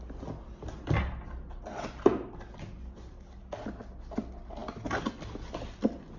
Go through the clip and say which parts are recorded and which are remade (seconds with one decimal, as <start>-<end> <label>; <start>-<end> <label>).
0.0-6.2 recorded

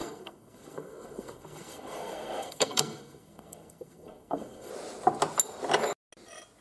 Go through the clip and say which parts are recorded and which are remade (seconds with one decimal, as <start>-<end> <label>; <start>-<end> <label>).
0.0-4.7 remade; 4.7-6.6 recorded

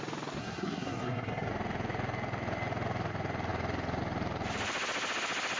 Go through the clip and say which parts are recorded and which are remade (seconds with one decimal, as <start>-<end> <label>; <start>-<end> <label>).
0.0-0.4 recorded; 0.4-1.5 remade; 1.5-5.6 recorded